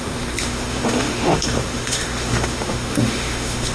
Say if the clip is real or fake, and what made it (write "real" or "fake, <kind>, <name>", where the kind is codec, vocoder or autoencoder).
fake, autoencoder, DAC-VAE